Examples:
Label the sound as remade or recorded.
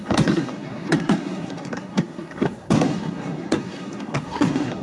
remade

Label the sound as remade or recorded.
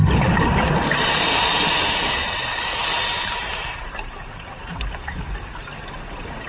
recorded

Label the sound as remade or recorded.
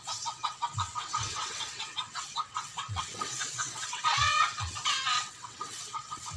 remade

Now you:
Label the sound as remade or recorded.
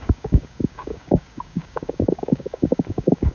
remade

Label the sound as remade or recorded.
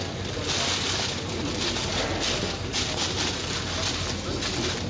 recorded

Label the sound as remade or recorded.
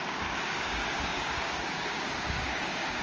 remade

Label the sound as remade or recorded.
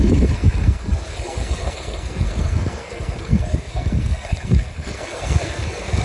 remade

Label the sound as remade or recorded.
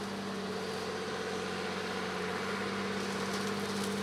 recorded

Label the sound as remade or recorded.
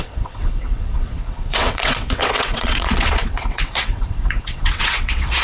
remade